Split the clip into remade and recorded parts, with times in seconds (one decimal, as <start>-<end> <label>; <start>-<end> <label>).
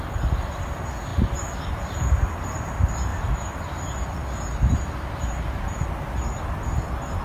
0.0-7.2 recorded